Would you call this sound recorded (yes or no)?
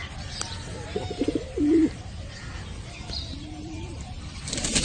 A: no